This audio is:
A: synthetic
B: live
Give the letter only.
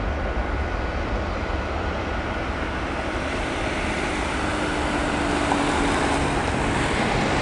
B